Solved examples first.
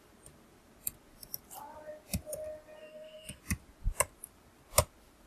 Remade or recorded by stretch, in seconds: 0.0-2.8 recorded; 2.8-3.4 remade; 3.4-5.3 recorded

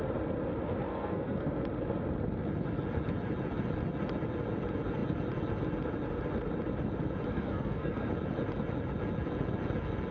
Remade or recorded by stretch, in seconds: 0.0-0.9 recorded; 0.9-1.6 remade; 1.6-7.3 recorded; 7.3-8.1 remade; 8.1-10.1 recorded

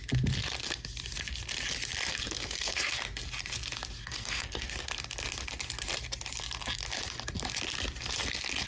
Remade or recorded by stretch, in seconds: 0.0-2.1 recorded; 2.1-3.0 remade; 3.0-4.0 recorded; 4.0-4.9 remade; 4.9-8.7 recorded